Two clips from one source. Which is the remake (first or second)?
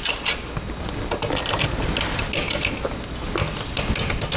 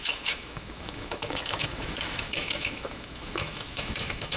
second